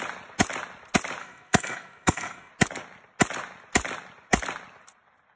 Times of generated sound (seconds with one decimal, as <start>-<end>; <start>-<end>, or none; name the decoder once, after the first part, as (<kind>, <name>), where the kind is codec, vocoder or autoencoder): 1.2-2.5 (codec, SNAC)